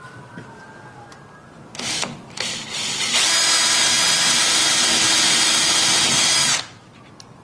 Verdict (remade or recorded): recorded